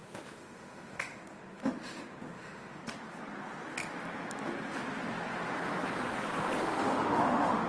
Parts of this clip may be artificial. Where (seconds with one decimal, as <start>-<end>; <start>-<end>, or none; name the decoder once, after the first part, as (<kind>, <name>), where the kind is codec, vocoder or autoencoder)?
0.0-2.8 (autoencoder, DAC-VAE); 6.6-7.7